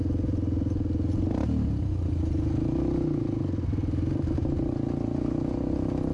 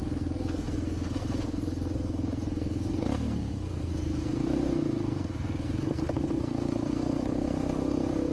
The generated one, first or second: second